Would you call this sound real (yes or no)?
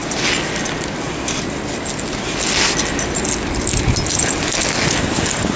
yes